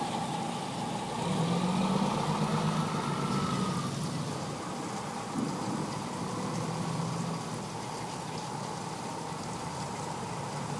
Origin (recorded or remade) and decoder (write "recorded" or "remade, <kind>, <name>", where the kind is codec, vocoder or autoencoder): recorded